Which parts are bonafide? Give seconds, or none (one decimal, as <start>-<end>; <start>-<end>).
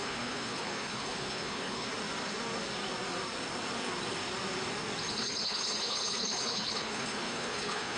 1.9-5.1